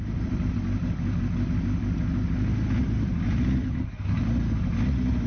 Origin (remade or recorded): recorded